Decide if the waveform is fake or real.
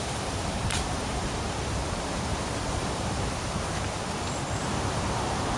fake